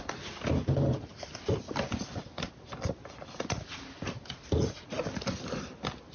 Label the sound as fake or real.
real